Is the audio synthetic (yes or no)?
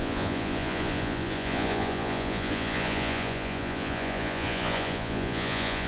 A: yes